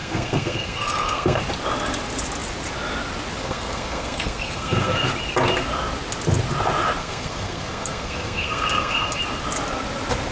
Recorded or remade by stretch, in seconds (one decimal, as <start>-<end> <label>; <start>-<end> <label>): 0.0-1.4 remade; 1.4-3.4 recorded; 3.4-5.1 remade; 5.1-7.0 recorded; 7.0-9.2 remade; 9.2-10.3 recorded